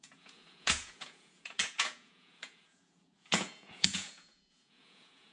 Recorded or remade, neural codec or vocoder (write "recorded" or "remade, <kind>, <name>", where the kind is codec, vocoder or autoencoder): remade, vocoder, Vocos